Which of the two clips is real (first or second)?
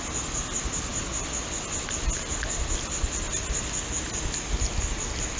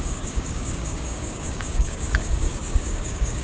first